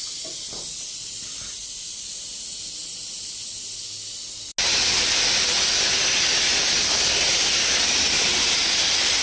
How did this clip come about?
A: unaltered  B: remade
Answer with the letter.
A